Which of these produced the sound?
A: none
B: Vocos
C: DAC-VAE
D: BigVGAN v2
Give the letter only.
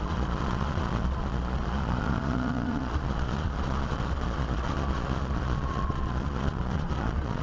B